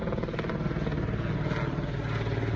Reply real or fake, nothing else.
real